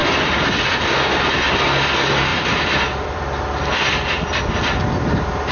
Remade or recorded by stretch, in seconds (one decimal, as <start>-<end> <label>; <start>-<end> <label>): 0.0-0.8 remade; 0.8-2.3 recorded; 2.3-4.4 remade; 4.4-5.5 recorded